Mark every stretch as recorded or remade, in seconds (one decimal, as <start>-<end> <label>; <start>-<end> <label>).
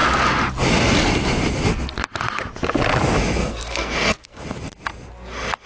0.0-3.4 recorded; 3.4-4.4 remade; 4.4-5.7 recorded